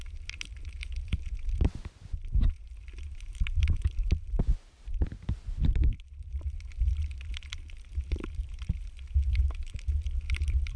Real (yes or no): no